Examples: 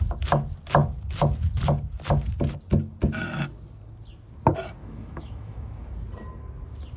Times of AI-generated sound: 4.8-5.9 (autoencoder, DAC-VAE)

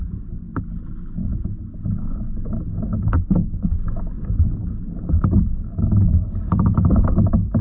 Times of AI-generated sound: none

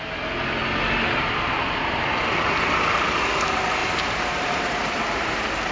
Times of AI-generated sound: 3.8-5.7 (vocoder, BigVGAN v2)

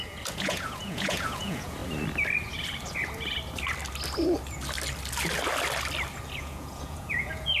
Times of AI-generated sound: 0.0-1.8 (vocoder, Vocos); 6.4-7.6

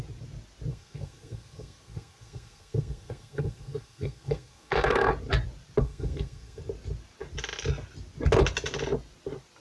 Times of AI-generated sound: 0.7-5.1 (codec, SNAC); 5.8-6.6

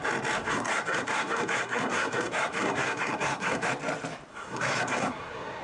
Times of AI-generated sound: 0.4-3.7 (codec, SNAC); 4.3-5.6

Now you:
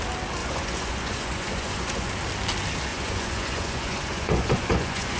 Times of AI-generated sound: 0.4-2.1 (vocoder, Vocos); 2.9-5.2